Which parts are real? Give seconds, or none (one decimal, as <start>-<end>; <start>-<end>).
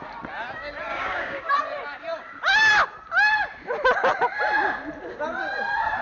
0.0-0.9; 1.5-6.0